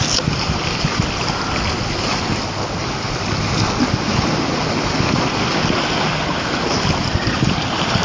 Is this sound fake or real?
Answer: real